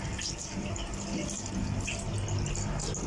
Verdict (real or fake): real